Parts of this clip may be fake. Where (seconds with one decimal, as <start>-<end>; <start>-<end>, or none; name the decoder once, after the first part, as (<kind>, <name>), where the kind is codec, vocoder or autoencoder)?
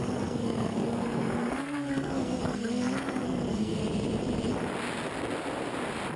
0.0-3.8 (codec, SNAC)